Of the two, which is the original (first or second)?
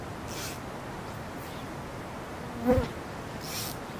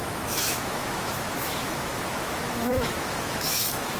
first